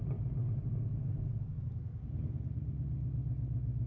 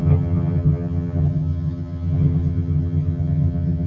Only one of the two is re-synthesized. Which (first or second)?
second